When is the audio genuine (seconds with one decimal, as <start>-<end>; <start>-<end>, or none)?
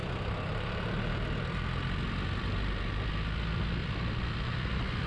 3.1-3.8